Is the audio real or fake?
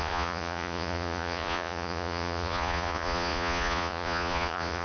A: fake